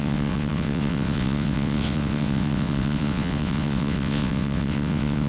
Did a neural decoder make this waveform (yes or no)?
yes